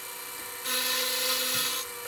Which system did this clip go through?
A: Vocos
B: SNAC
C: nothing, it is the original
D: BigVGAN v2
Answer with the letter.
C